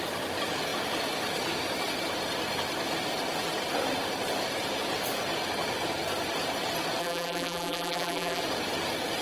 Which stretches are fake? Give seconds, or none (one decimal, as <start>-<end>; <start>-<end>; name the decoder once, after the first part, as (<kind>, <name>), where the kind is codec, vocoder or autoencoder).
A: 7.0-8.4 (vocoder, BigVGAN v2)